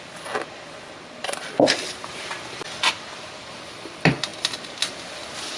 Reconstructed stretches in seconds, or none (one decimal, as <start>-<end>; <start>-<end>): none